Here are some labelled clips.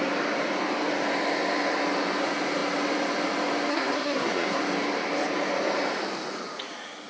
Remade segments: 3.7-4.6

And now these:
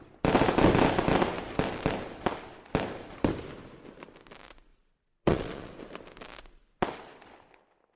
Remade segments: 4.7-5.7

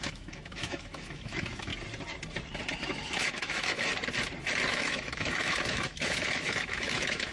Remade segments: 0.0-1.7; 2.8-3.9; 4.7-7.3

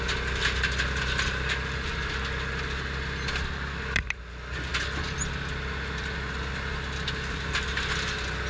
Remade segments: none

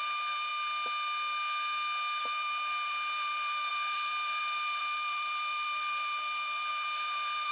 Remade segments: 0.0-0.5; 2.2-7.5

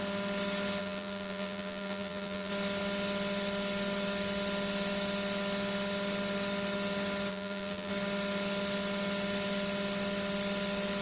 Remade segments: 0.8-2.5; 7.3-7.9

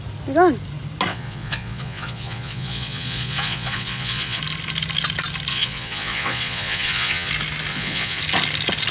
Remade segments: 1.1-4.4; 5.5-7.3; 7.7-8.2

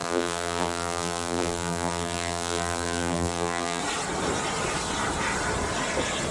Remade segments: 0.0-3.8